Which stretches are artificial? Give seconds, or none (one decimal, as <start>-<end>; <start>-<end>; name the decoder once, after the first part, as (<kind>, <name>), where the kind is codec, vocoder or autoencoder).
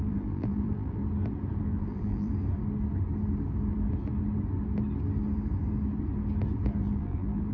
0.0-1.0 (vocoder, BigVGAN v2); 1.6-2.3; 6.8-7.5